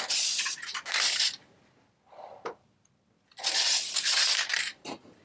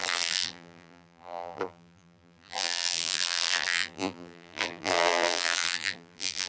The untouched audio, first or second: first